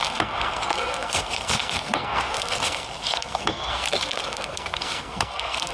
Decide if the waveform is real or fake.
fake